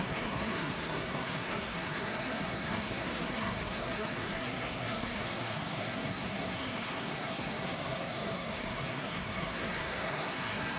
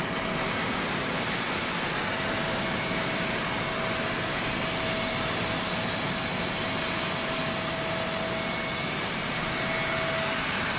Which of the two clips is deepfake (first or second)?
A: first